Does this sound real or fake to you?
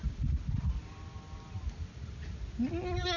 real